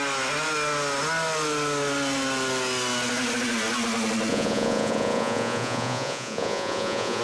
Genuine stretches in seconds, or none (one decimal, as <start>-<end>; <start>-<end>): 0.0-4.3